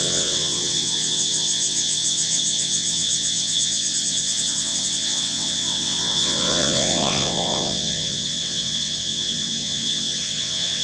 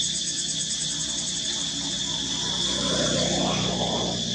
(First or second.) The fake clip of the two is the first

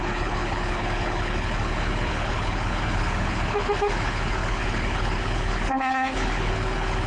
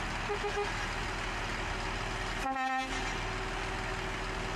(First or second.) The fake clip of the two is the first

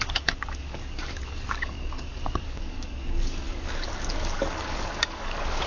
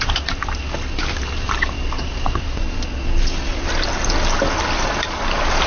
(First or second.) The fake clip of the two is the first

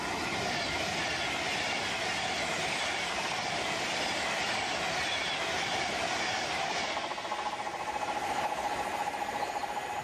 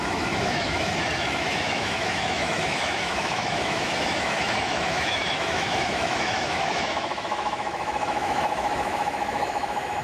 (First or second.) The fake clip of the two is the second